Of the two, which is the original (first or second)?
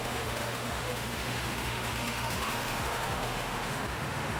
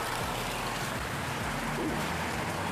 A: second